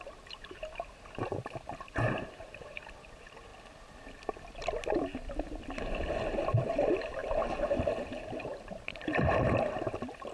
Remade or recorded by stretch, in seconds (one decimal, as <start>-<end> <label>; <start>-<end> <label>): 0.0-3.5 remade; 3.5-6.3 recorded; 6.3-10.3 remade